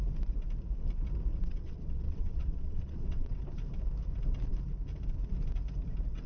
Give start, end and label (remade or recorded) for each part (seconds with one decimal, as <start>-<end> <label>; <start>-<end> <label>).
0.0-1.3 recorded; 1.3-3.4 remade; 3.4-6.3 recorded